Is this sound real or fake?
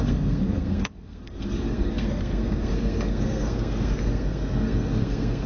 fake